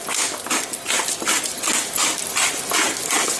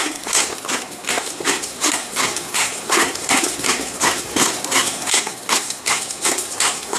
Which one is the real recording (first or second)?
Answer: first